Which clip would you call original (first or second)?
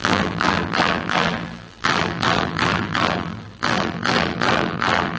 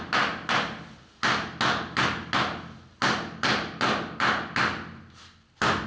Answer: second